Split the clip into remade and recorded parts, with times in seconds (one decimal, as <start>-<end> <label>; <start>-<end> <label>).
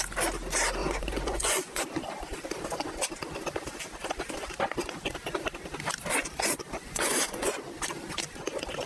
0.0-0.8 recorded; 0.8-1.8 remade; 1.8-6.8 recorded; 6.8-7.5 remade; 7.5-8.9 recorded